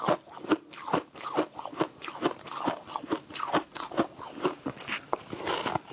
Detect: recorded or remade recorded